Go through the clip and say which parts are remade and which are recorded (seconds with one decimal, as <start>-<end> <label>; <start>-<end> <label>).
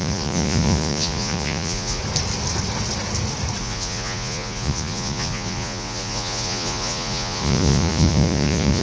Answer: 0.0-2.0 remade; 2.0-3.6 recorded; 3.6-8.8 remade